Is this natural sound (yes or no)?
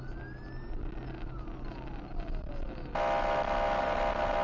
yes